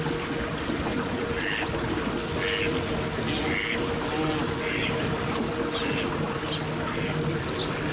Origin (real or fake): real